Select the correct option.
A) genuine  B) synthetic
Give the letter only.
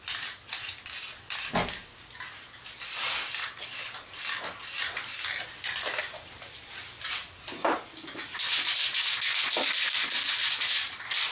A